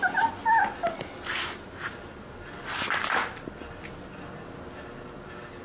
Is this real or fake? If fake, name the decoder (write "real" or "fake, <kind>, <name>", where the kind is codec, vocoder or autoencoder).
real